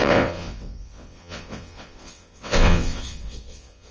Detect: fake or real fake